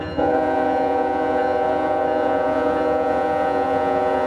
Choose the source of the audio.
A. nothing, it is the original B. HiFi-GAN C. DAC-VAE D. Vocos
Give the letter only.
D